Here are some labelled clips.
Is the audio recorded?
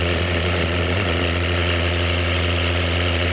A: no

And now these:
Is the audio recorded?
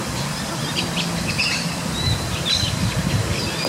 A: no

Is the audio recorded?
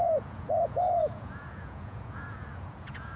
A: no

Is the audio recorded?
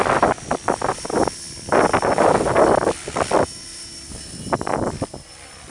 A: yes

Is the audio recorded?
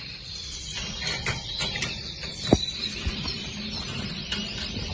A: no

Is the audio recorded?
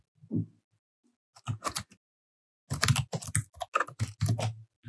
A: yes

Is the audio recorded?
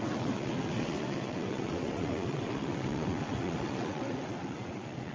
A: no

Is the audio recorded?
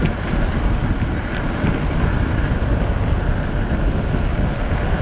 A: yes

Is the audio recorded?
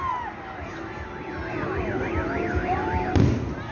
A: yes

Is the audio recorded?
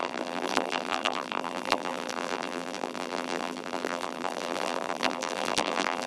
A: no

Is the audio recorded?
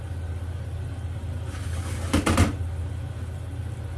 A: yes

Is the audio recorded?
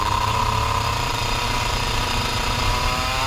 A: no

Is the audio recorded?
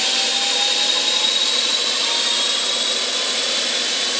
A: yes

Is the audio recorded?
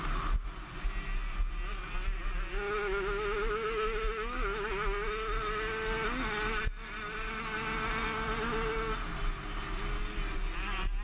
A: yes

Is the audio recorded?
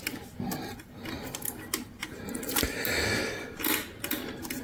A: yes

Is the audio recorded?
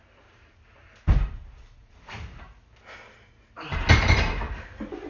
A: yes